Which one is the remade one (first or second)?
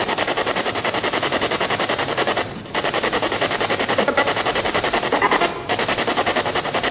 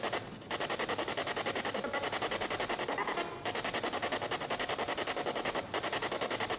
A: first